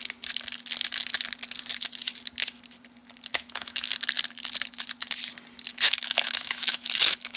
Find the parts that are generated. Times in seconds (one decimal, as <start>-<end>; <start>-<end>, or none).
3.3-3.9; 5.7-7.4